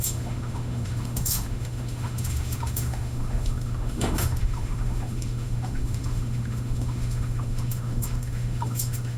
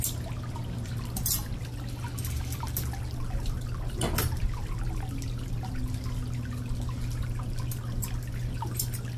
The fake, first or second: first